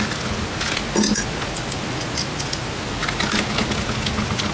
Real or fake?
real